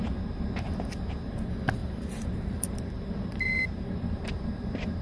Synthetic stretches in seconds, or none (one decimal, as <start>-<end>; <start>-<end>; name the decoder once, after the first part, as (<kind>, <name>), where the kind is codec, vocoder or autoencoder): 1.8-5.0 (vocoder, BigVGAN v2)